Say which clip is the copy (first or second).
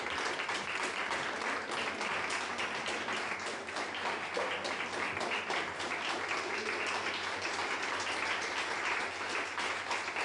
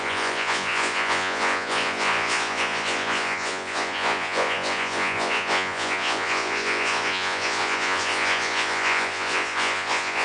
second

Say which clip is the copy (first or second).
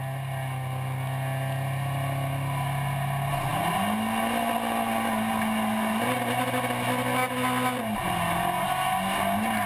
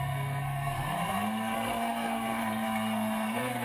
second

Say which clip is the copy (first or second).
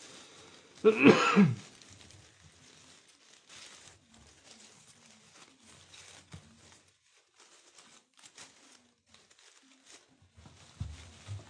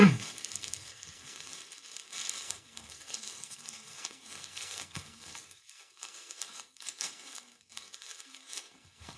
second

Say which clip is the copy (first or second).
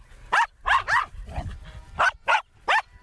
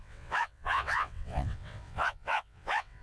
second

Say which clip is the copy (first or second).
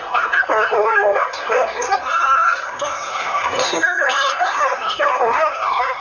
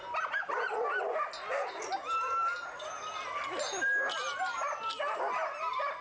first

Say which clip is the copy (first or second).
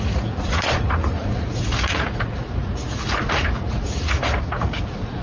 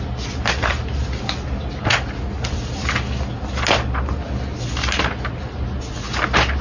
first